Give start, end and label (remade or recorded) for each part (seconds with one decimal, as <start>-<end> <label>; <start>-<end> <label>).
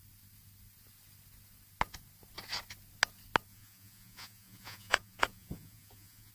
0.0-3.5 recorded; 3.5-6.3 remade